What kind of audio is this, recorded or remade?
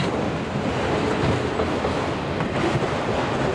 recorded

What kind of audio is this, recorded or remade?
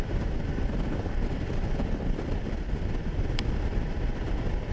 remade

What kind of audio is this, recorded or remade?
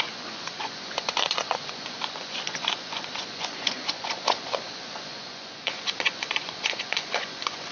remade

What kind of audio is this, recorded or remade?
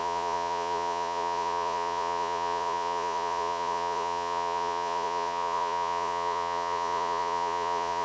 remade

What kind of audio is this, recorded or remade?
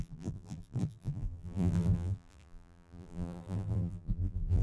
remade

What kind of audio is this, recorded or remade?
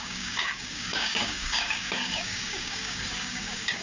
remade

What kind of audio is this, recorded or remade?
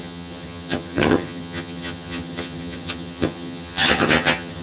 remade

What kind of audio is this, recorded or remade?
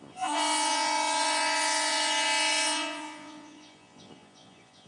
remade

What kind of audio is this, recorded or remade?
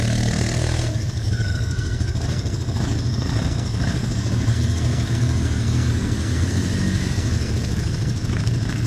remade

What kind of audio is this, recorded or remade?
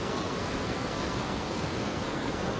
remade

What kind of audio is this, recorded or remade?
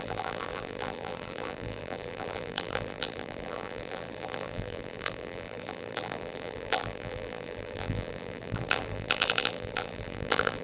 remade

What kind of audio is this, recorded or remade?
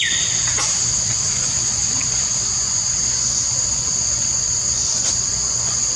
remade